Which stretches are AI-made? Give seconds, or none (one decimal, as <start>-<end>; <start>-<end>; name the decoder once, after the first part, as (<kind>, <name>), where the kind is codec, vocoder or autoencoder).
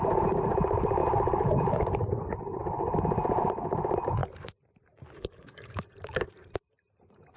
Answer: 4.2-7.4 (vocoder, BigVGAN v2)